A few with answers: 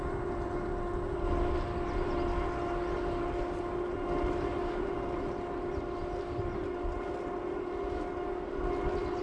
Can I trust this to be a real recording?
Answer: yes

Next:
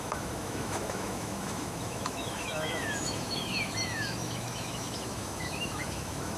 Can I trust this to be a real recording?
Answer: no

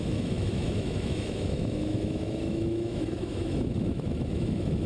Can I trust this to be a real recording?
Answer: no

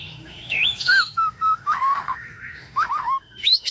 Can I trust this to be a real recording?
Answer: no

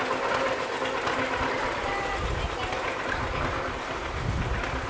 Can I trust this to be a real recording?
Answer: yes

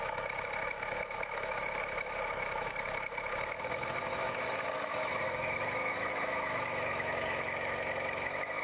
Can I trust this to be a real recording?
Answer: no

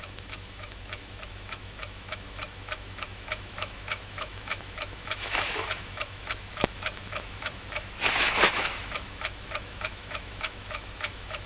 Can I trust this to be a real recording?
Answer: no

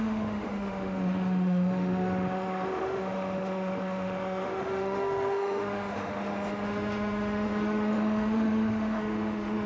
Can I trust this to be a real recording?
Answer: no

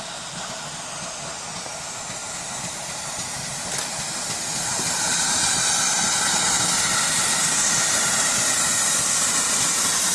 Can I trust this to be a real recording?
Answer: yes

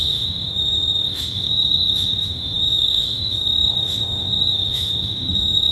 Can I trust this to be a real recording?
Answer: no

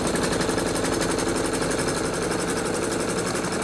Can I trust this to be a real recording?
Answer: yes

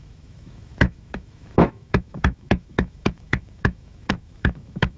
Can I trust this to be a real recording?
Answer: no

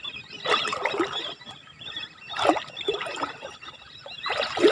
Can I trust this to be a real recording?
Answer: yes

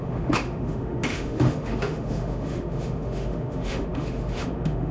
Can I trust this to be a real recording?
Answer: no